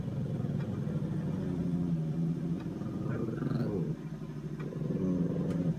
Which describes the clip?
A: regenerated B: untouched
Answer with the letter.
B